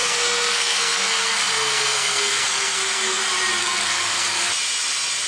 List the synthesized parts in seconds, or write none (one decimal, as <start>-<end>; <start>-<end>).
0.0-3.2; 3.6-4.5